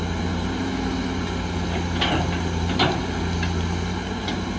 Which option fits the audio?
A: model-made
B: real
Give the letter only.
B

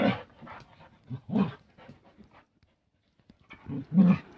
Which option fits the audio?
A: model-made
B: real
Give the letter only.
B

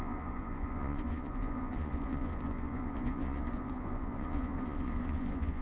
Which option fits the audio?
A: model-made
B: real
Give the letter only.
A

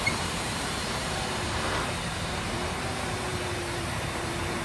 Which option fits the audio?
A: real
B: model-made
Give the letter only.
B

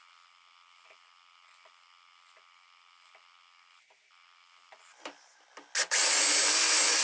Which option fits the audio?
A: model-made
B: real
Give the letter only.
B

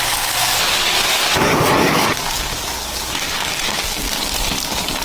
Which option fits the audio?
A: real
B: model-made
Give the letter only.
B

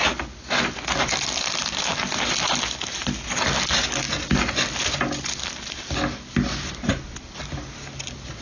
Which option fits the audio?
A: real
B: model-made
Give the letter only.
A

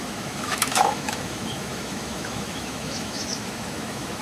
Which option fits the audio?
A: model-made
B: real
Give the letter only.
A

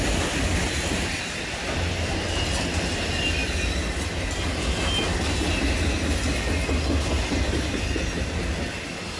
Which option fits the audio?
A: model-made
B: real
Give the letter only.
B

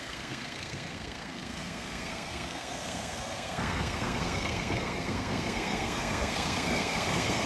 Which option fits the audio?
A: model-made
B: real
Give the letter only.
A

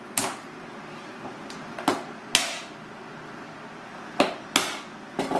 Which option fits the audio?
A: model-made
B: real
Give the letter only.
B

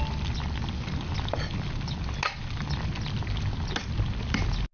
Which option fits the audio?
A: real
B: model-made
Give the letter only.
A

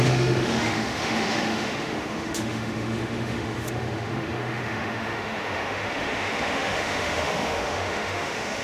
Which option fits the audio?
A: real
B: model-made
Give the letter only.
B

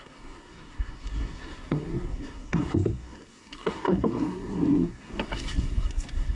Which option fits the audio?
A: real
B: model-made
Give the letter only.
B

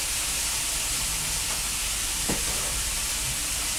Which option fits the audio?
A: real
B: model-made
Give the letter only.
A